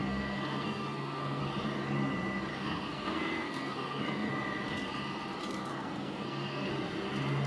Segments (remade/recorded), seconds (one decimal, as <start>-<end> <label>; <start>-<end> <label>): 0.0-1.4 remade; 1.4-2.5 recorded; 2.5-4.3 remade; 4.3-5.7 recorded; 5.7-6.7 remade; 6.7-7.5 recorded